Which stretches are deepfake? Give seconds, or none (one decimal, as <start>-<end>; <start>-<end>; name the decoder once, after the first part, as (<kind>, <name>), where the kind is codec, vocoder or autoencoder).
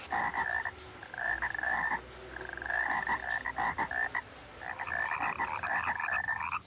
none